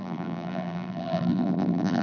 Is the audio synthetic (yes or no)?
yes